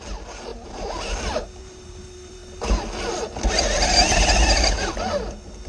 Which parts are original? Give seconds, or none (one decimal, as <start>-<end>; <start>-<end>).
0.5-1.3; 2.4-5.7

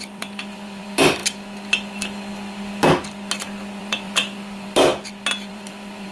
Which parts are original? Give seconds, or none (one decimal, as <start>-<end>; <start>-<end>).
1.2-3.8; 4.9-5.5

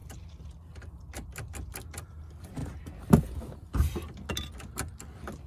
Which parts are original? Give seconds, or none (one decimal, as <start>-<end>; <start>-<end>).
0.0-2.1; 2.6-5.5

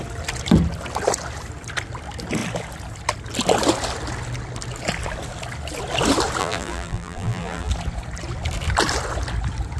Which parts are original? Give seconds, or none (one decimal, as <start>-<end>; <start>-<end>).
0.0-6.4; 7.7-9.8

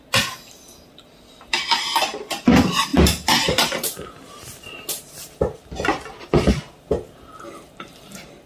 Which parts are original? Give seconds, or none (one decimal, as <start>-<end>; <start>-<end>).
0.0-8.5

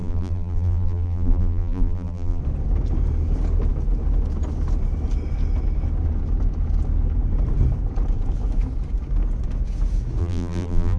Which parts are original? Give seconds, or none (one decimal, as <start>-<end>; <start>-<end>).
2.4-10.2

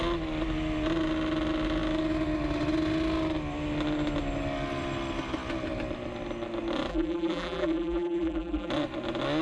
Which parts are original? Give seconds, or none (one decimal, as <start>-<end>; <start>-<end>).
0.0-6.9; 8.7-9.4

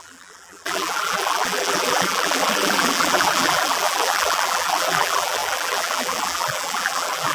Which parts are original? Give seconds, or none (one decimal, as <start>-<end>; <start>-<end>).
none